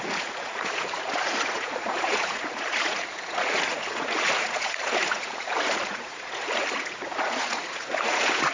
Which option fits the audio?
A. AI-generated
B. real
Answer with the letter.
A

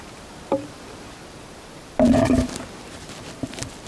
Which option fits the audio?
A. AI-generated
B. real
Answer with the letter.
B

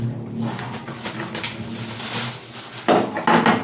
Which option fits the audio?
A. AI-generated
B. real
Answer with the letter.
B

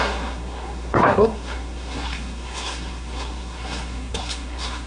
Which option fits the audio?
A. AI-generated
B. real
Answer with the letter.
A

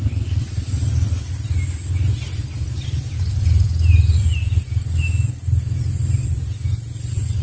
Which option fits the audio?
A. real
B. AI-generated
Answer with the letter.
A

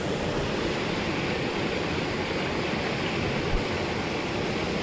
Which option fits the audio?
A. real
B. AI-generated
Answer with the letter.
A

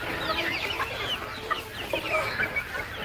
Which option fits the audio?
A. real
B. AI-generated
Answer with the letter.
A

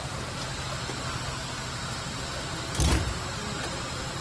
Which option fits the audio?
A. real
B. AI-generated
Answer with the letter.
A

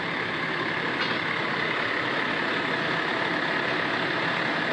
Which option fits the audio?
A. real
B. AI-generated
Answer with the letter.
A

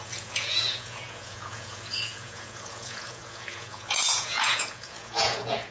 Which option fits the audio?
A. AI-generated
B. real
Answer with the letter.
A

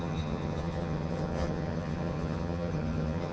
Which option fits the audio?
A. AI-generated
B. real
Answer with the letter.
A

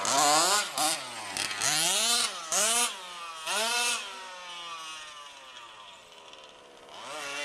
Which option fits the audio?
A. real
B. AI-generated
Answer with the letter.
A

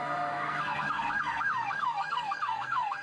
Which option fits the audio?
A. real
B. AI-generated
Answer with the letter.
B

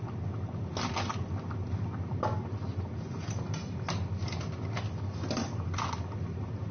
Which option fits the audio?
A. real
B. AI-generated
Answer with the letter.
A